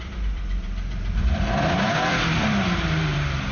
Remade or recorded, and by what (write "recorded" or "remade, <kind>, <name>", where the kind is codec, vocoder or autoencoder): remade, vocoder, BigVGAN v2